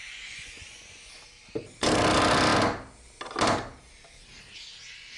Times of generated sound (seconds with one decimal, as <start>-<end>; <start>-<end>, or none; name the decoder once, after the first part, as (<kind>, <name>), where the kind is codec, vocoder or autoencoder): 0.0-1.1 (vocoder, Vocos)